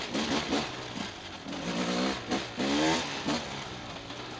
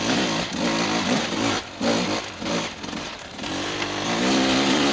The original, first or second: first